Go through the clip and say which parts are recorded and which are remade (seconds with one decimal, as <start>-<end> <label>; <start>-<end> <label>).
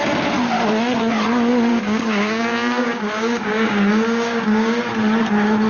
0.0-1.7 recorded; 1.7-4.8 remade; 4.8-5.7 recorded